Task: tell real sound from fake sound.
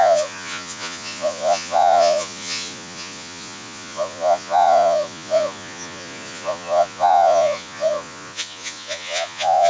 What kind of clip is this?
fake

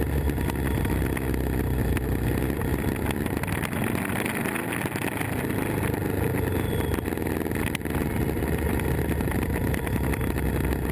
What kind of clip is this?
real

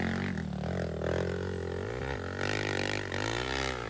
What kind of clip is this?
real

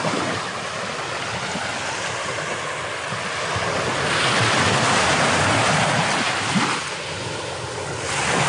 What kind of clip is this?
real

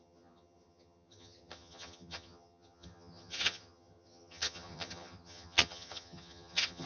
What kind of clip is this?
fake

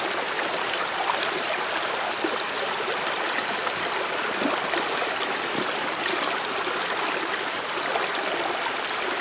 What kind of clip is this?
real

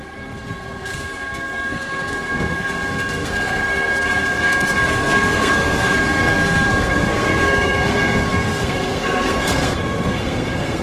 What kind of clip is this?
fake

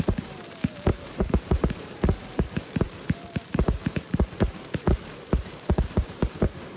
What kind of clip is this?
fake